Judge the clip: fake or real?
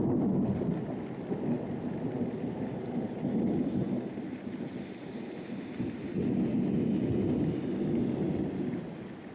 real